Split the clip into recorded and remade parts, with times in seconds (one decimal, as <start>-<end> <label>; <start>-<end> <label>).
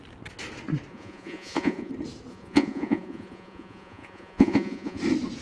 0.0-0.9 recorded; 0.9-1.9 remade; 1.9-2.3 recorded; 2.3-5.0 remade; 5.0-5.4 recorded